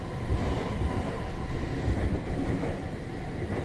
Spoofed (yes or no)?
no